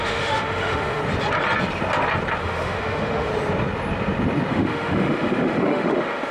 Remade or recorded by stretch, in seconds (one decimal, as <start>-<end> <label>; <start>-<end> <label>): 0.0-1.0 remade; 1.0-2.4 recorded; 2.4-3.3 remade; 3.3-4.5 recorded; 4.5-6.3 remade